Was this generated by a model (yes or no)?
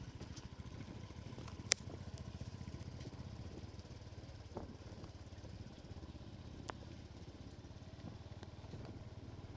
no